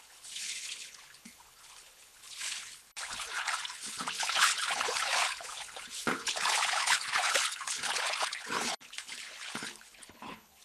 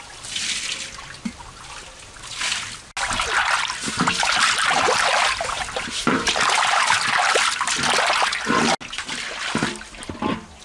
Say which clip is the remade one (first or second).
first